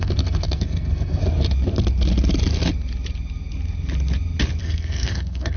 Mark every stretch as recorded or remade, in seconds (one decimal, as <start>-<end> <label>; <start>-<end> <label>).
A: 0.0-1.2 remade; 1.2-4.6 recorded; 4.6-5.6 remade